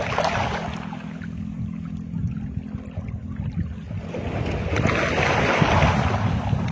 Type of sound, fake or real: real